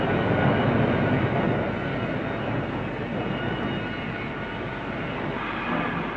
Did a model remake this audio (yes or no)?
no